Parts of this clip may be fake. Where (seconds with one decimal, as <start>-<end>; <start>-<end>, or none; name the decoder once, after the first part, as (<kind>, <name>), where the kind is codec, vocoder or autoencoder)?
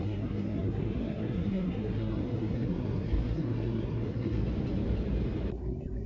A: 0.0-4.4 (codec, SNAC); 5.5-6.1